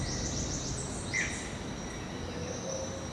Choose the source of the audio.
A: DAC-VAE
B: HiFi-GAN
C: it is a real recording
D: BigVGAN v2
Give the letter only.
C